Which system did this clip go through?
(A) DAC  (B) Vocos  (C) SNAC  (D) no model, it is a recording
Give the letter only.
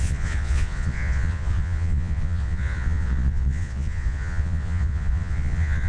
B